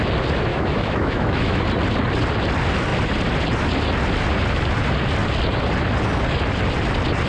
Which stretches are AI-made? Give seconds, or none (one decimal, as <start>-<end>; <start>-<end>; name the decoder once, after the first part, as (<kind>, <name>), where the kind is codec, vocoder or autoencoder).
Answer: 0.5-1.6 (autoencoder, DAC-VAE)